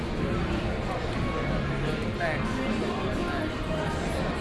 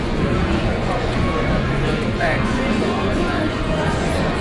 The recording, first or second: first